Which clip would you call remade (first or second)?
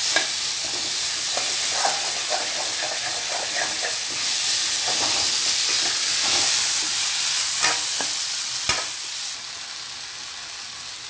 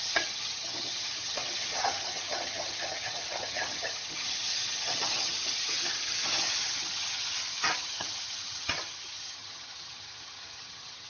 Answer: second